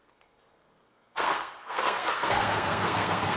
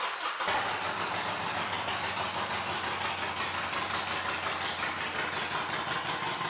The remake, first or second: first